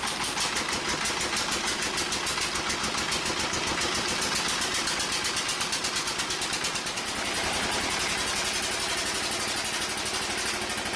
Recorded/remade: recorded